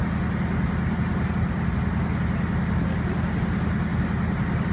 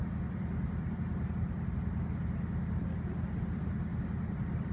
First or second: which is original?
first